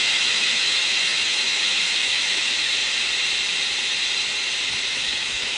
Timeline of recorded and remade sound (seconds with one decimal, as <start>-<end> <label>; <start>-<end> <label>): 0.0-2.8 remade; 2.8-4.9 recorded; 4.9-5.6 remade